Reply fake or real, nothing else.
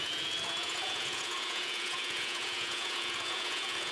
fake